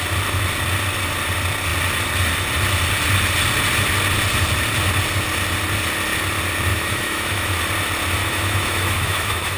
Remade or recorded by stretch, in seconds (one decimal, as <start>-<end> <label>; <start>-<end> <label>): 0.0-6.7 recorded; 6.7-7.6 remade; 7.6-8.2 recorded; 8.2-9.6 remade